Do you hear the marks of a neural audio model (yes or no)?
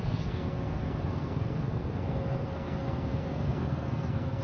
yes